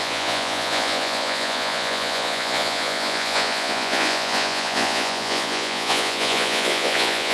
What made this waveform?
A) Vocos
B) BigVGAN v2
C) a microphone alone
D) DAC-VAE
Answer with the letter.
A